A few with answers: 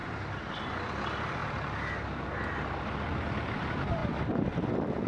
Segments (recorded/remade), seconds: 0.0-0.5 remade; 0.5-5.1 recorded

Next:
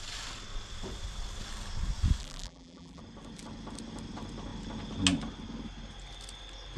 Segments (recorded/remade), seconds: 0.0-2.2 recorded; 2.2-3.0 remade; 3.0-6.8 recorded

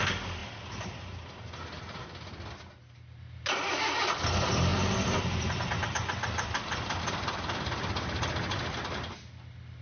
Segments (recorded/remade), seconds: 0.0-4.7 recorded; 4.7-7.0 remade; 7.0-9.8 recorded

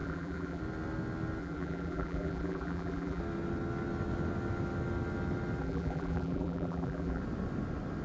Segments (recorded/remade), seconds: 0.0-0.6 remade; 0.6-1.4 recorded; 1.4-3.2 remade; 3.2-5.6 recorded; 5.6-7.2 remade; 7.2-8.0 recorded

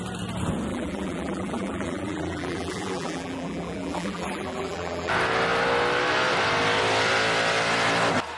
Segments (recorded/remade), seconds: 0.0-0.7 recorded; 0.7-5.1 remade; 5.1-8.4 recorded